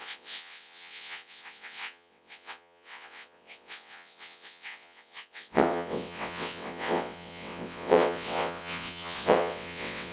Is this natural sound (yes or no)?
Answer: no